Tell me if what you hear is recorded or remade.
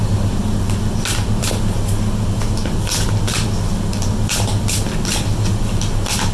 recorded